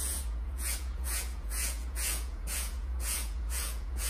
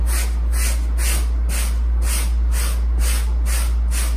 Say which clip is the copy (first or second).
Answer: first